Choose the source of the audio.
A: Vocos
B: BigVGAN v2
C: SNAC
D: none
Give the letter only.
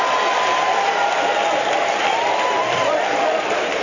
B